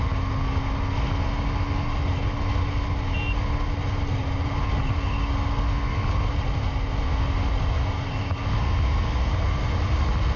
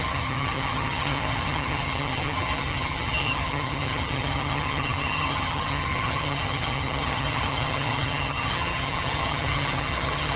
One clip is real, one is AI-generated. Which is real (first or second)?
first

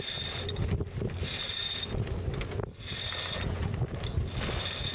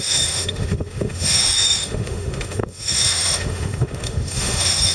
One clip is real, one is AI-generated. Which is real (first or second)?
first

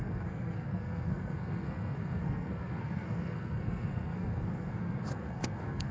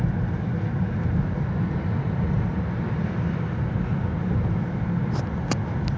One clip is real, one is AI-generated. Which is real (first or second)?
second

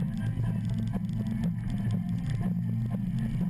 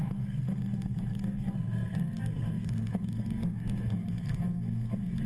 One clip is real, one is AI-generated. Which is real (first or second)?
first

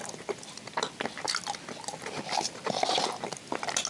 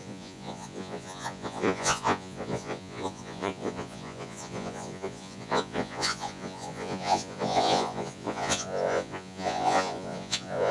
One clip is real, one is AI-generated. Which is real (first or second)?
first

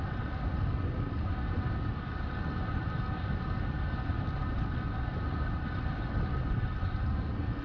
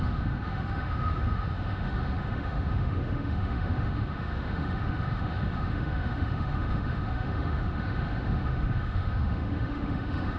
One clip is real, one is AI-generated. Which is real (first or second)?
first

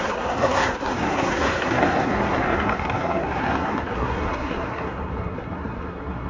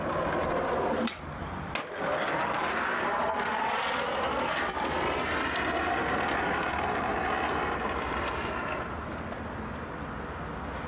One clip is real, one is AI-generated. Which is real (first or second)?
second